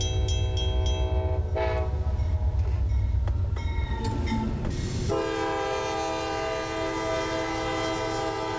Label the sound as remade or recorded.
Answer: recorded